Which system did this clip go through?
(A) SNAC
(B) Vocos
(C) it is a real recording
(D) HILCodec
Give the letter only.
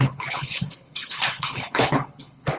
D